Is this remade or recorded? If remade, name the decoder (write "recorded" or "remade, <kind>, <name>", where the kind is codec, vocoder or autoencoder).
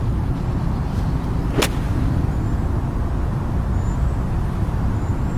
recorded